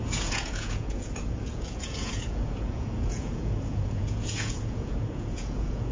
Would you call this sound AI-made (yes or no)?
yes